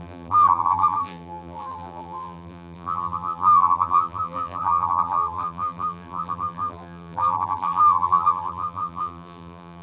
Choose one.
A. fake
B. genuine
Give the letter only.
A